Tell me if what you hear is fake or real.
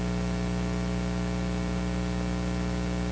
real